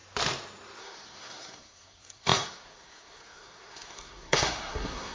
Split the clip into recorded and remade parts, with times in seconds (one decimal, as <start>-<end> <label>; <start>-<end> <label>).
0.0-0.8 recorded; 0.8-5.1 remade